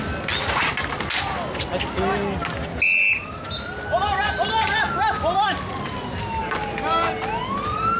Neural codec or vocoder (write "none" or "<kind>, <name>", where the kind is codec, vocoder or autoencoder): none